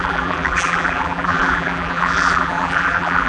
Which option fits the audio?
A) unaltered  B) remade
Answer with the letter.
B